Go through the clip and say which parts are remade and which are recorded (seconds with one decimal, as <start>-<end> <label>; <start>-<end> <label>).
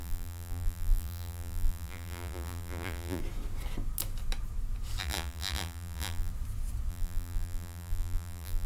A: 0.0-3.2 remade; 3.2-5.0 recorded; 5.0-6.3 remade; 6.3-6.9 recorded; 6.9-8.7 remade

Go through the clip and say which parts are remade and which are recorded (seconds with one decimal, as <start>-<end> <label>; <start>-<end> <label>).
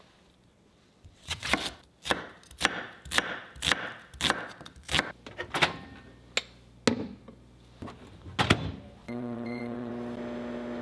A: 0.0-0.5 recorded; 0.5-1.5 remade; 1.5-9.0 recorded; 9.0-9.9 remade; 9.9-10.8 recorded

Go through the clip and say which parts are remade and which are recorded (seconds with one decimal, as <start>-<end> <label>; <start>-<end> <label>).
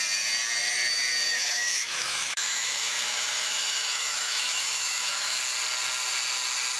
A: 0.0-1.3 recorded; 1.3-5.4 remade; 5.4-6.8 recorded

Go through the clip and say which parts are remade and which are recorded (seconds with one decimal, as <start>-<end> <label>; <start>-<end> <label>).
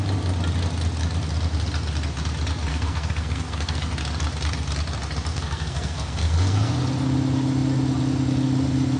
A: 0.0-2.7 recorded; 2.7-3.9 remade; 3.9-5.3 recorded; 5.3-6.7 remade; 6.7-9.0 recorded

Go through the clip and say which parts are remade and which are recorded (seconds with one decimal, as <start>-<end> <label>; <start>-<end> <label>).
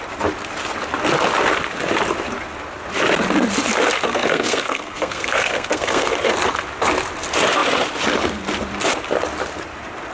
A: 0.0-4.1 recorded; 4.1-6.1 remade; 6.1-10.1 recorded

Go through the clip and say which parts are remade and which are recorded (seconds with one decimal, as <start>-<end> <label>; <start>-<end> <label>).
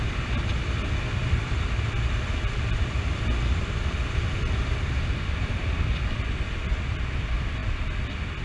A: 0.0-1.2 recorded; 1.2-5.6 remade; 5.6-8.4 recorded